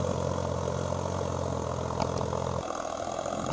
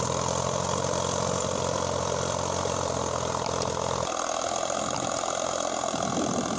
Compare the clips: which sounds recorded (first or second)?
first